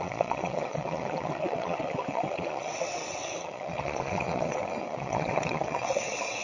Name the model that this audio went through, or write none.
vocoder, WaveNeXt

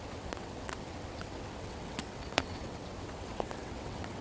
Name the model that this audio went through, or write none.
vocoder, WaveNeXt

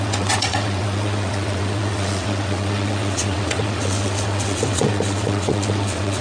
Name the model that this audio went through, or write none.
vocoder, WaveNeXt